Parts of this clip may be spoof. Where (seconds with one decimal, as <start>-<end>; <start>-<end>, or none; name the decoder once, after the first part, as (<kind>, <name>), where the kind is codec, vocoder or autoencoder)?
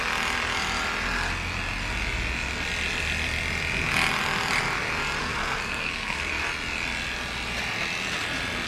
5.2-6.3 (codec, SNAC)